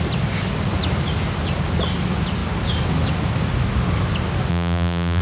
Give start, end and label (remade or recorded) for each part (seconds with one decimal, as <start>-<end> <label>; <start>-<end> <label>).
0.0-4.5 recorded; 4.5-5.2 remade